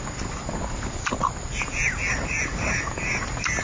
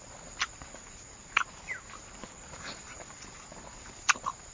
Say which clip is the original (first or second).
first